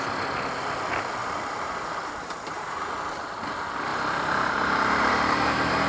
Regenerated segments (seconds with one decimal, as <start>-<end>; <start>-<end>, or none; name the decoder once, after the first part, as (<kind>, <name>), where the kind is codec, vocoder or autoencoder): 1.2-2.9 (vocoder, BigVGAN v2); 3.9-5.9